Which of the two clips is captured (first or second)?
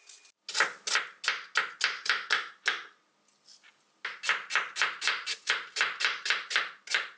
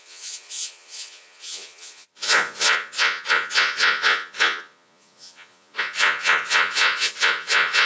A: first